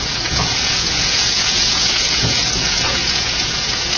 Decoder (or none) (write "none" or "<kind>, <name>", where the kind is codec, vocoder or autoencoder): vocoder, Vocos